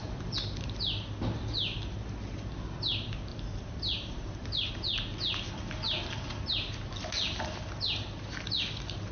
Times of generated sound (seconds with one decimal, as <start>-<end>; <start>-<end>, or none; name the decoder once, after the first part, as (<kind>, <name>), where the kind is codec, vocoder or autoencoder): 3.3-4.7 (vocoder, BigVGAN v2)